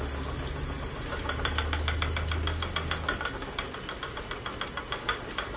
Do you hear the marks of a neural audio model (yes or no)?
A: no